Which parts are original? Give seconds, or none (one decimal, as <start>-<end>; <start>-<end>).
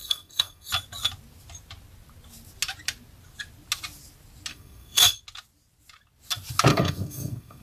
0.7-4.5; 5.2-6.7